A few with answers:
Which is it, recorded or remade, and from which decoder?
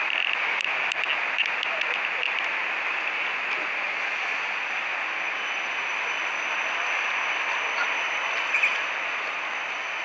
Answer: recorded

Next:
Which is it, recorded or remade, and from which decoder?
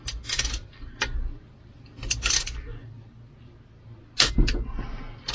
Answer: recorded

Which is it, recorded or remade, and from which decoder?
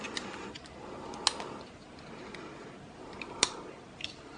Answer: recorded